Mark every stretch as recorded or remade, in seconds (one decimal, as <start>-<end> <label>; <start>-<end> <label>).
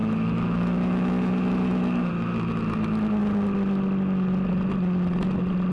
0.0-2.1 remade; 2.1-5.7 recorded